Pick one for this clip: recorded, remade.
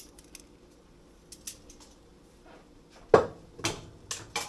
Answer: recorded